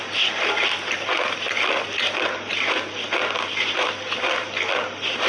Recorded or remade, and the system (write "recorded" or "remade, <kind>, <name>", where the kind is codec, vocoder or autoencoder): remade, vocoder, BigVGAN v2